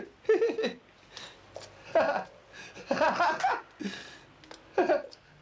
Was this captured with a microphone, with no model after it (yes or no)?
yes